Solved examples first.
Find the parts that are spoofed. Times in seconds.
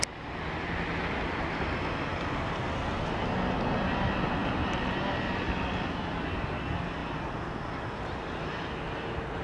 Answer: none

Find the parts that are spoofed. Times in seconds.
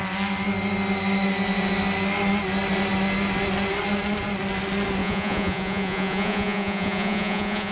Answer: 5.0-7.7 (vocoder, Vocos)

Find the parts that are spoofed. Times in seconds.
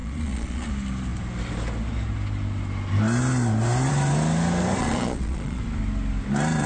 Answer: 0.0-0.7 (vocoder, Vocos); 4.8-5.6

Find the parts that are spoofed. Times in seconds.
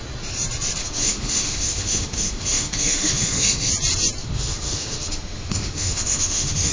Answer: 0.8-3.7 (autoencoder, DAC-VAE); 4.2-6.7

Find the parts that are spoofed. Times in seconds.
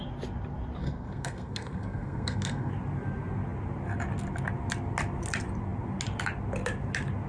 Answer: 0.8-2.7 (codec, SNAC)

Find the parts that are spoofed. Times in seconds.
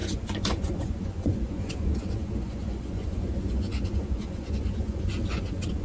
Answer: 0.0-5.8 (vocoder, Vocos)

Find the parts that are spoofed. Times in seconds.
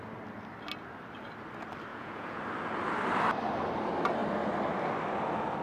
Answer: 1.9-2.4 (vocoder, Vocos)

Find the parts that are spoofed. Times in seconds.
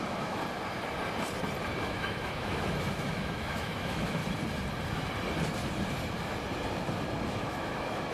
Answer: 0.0-0.4 (autoencoder, DAC-VAE); 1.8-4.2; 7.3-8.1